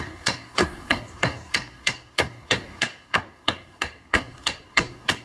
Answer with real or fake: fake